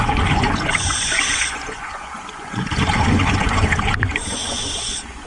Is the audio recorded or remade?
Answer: remade